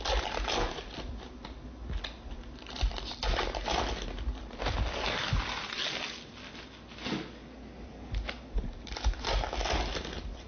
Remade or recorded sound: recorded